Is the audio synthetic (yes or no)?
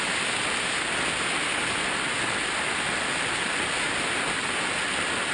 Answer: no